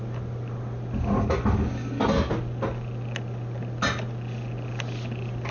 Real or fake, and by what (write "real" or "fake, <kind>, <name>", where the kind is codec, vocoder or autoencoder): real